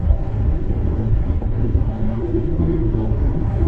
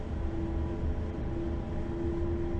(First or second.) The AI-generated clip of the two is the first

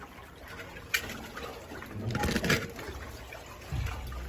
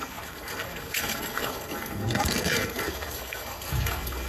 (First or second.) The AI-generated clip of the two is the second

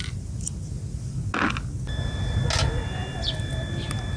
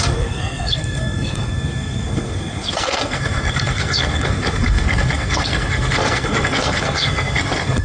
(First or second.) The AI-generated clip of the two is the second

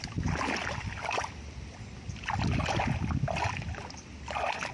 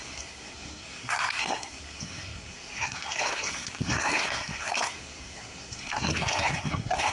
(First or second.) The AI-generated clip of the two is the second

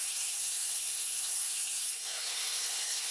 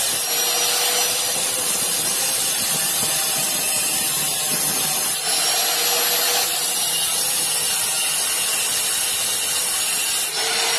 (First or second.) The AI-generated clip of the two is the first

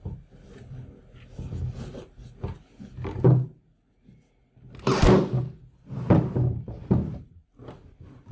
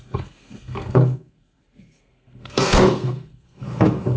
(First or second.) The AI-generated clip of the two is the second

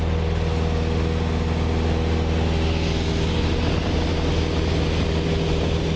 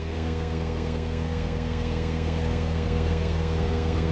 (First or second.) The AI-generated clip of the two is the second